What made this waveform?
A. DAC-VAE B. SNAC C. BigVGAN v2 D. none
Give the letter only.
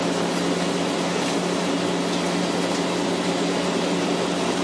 D